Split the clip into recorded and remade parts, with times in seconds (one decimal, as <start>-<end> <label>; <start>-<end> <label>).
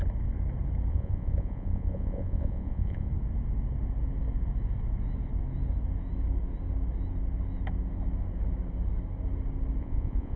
0.0-0.9 recorded; 0.9-3.1 remade; 3.1-9.8 recorded; 9.8-10.4 remade